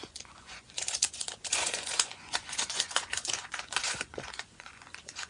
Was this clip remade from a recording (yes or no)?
yes